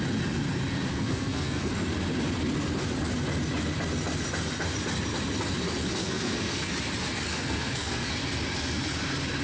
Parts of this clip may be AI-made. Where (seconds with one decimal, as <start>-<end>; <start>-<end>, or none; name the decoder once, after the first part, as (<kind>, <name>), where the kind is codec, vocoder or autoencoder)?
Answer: 0.9-1.7 (codec, SNAC); 6.0-6.7; 7.3-8.1